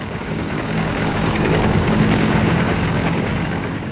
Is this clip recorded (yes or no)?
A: no